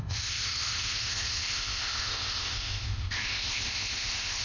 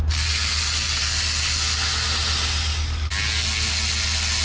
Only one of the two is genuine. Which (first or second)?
second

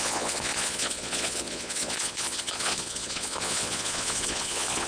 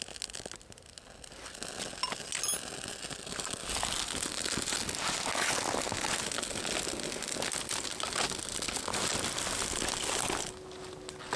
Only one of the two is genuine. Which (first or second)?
second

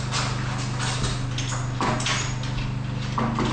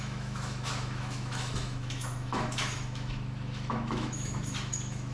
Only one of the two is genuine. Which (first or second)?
first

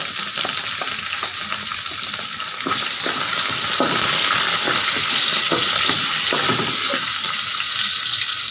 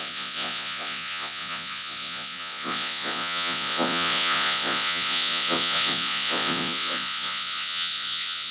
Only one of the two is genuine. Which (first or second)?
first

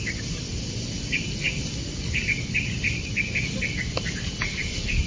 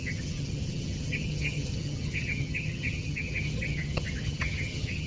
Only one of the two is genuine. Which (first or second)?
first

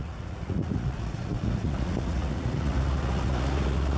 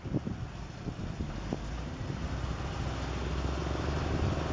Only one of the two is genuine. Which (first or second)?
second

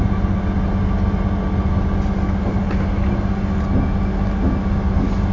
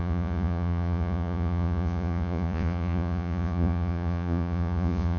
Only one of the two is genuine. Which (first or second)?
first